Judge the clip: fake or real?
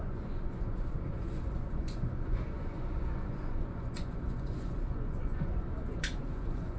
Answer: fake